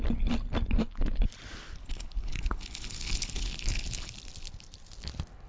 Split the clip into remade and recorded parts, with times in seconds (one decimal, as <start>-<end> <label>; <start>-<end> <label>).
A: 0.0-1.8 recorded; 1.8-4.1 remade; 4.1-5.5 recorded